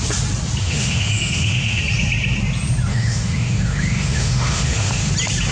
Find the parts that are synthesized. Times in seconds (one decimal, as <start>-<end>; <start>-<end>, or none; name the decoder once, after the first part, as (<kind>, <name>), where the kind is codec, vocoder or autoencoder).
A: 0.6-1.8 (autoencoder, DAC-VAE); 2.9-5.1